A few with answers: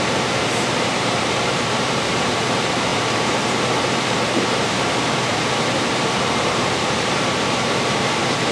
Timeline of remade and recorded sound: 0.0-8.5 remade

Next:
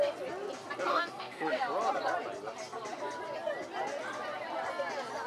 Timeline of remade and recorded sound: 0.0-0.9 recorded; 0.9-1.6 remade; 1.6-5.3 recorded

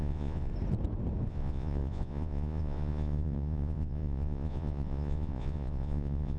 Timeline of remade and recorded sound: 0.0-0.5 remade; 0.5-1.3 recorded; 1.3-6.4 remade

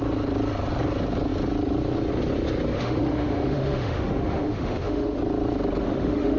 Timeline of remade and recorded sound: 0.0-2.7 recorded; 2.7-5.2 remade; 5.2-5.8 recorded; 5.8-6.4 remade

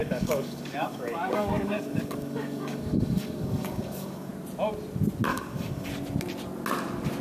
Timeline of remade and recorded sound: 0.0-4.3 remade; 4.3-5.3 recorded; 5.3-5.9 remade; 5.9-7.2 recorded

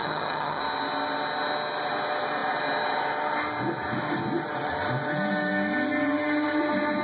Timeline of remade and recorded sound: 0.0-0.6 remade; 0.6-7.0 recorded

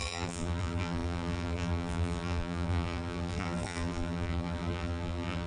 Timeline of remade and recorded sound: 0.0-5.5 remade